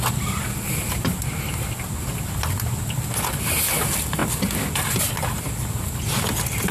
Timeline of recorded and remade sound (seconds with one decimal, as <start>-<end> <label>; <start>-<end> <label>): 0.0-6.7 recorded